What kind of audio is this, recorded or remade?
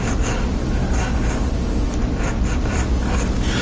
recorded